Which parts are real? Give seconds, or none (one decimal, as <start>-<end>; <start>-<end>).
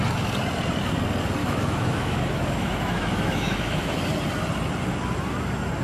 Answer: 0.0-1.4; 4.0-5.8